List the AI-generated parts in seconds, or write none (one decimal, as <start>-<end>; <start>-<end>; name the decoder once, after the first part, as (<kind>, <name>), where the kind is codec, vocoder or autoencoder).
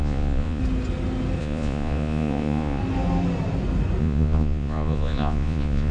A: 0.0-0.6 (vocoder, Vocos); 1.4-2.8; 4.0-5.9